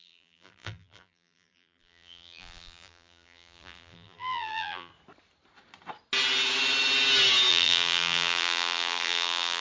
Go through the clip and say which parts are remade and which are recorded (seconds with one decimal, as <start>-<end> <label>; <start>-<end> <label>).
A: 0.0-4.9 remade; 4.9-7.5 recorded; 7.5-9.6 remade